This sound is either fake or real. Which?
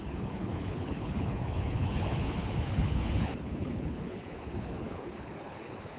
fake